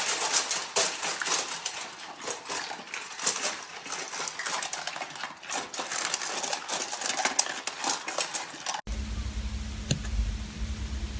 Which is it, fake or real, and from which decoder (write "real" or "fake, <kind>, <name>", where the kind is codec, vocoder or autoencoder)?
real